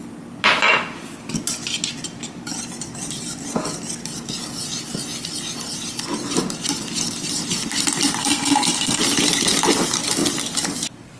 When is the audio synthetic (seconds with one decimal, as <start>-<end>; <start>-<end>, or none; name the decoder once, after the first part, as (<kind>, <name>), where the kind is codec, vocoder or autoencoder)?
8.2-9.0 (codec, SNAC)